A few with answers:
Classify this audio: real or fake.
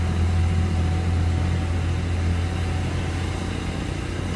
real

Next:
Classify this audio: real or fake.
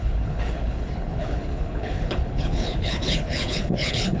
fake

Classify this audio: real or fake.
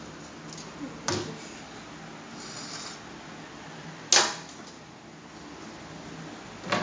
real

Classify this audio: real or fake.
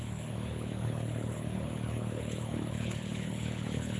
fake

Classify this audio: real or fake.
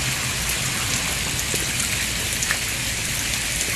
real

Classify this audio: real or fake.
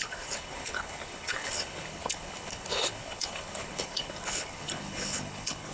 fake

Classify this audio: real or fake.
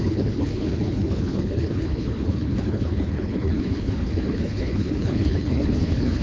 fake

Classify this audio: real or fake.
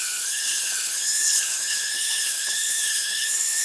fake